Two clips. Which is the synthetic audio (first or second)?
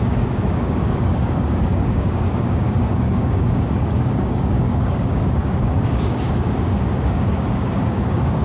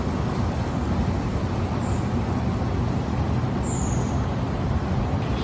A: first